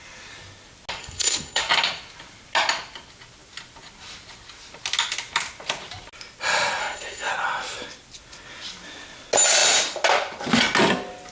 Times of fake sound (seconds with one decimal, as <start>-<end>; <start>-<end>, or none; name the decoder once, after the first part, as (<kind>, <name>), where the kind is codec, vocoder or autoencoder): 1.0-1.6 (codec, SNAC); 6.8-7.3